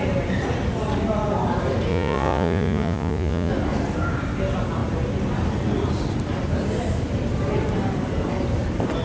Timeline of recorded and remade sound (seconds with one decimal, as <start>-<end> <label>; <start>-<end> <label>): 0.0-1.9 recorded; 1.9-3.5 remade; 3.5-9.0 recorded